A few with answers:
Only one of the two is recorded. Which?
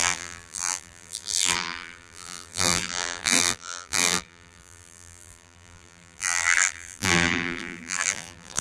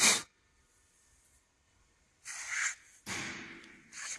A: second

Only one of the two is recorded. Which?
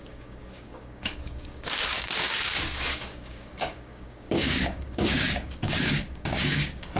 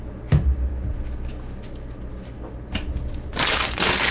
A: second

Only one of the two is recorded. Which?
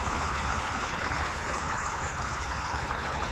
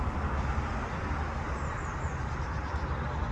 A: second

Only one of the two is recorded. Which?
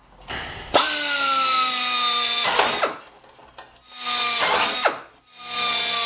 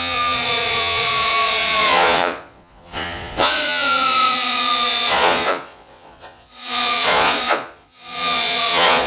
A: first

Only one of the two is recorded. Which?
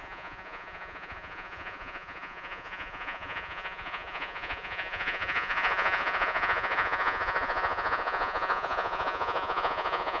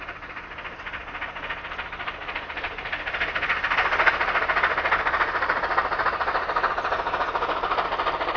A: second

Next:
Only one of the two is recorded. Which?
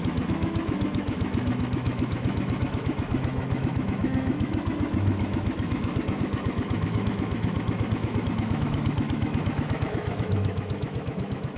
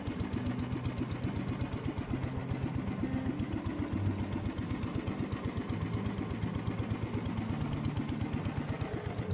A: second